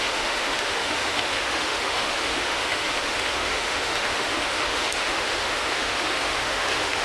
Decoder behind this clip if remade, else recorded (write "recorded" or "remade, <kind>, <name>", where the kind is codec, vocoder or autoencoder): remade, autoencoder, DAC-VAE